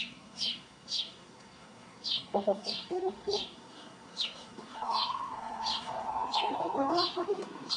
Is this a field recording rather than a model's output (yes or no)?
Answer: no